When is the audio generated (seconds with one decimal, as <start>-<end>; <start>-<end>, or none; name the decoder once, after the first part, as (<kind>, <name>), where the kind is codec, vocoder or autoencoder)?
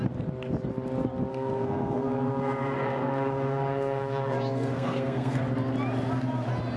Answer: 1.3-5.4 (codec, SNAC)